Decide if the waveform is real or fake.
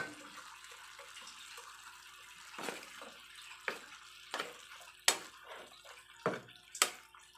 real